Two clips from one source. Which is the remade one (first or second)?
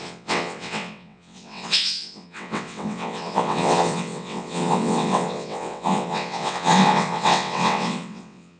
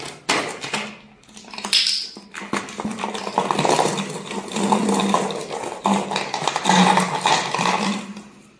first